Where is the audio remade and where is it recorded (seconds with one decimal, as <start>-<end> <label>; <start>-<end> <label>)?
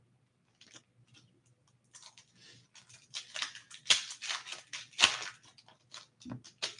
0.0-6.8 recorded